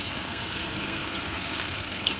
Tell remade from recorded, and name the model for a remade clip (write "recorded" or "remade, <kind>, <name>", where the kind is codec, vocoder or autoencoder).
remade, codec, SNAC